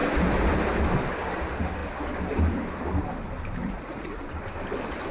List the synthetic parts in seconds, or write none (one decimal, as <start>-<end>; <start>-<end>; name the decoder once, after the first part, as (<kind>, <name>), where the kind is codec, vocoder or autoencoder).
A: 3.6-4.2 (vocoder, Vocos)

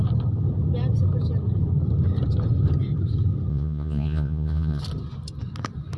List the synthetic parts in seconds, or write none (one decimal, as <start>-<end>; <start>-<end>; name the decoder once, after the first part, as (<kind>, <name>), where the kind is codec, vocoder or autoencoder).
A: 3.5-4.8 (vocoder, Vocos)

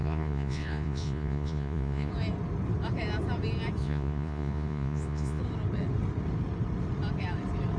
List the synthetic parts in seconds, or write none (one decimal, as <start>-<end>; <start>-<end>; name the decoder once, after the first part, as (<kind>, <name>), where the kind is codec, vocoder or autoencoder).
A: 0.0-2.1 (vocoder, Vocos); 3.8-5.4

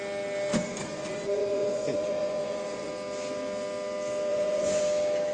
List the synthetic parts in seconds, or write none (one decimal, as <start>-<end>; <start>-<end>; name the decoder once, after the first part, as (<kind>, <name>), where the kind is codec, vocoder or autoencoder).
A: 0.5-2.9 (vocoder, Vocos); 4.3-4.8